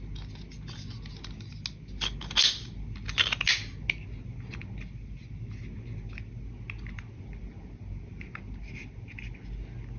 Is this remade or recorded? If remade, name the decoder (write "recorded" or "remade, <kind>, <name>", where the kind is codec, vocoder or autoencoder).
recorded